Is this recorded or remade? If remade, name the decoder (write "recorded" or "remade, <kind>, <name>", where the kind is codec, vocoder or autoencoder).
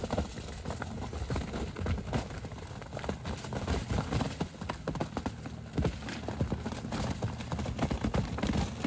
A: recorded